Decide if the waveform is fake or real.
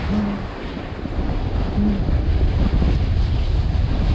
real